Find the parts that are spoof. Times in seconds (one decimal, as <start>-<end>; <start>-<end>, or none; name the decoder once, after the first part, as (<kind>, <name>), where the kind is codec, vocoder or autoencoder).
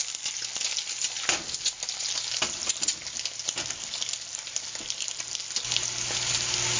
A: none